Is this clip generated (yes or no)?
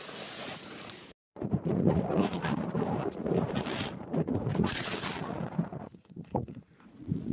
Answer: yes